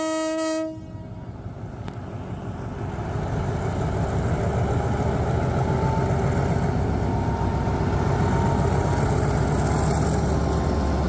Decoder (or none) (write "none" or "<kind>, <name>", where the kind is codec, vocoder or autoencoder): none